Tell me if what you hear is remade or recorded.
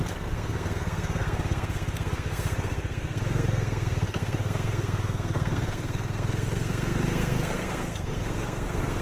remade